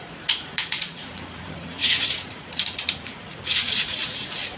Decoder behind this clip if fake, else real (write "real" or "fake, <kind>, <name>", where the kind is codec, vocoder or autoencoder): fake, vocoder, Vocos